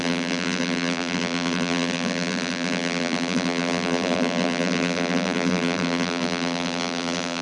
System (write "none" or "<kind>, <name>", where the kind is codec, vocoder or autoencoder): vocoder, BigVGAN v2